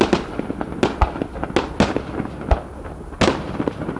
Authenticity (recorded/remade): recorded